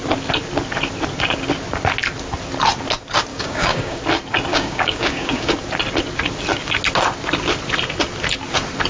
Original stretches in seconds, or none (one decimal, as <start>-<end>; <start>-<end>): 0.0-3.3; 4.0-4.5; 5.5-8.9